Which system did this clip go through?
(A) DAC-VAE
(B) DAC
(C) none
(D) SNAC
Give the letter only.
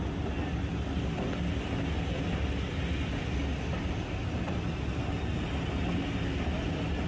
C